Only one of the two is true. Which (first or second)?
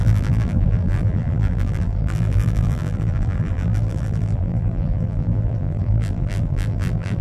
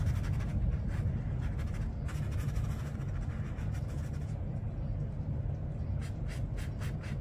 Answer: second